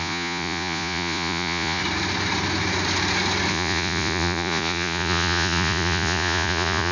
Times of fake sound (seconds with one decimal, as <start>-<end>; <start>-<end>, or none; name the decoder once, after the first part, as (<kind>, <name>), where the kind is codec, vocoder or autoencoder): 0.0-1.8 (vocoder, Vocos); 3.5-6.9